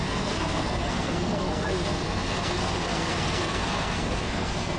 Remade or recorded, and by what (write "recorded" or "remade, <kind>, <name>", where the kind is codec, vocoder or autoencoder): remade, codec, SNAC